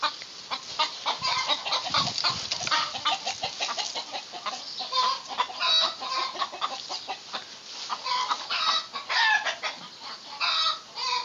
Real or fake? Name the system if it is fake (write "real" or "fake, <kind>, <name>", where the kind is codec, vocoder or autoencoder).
real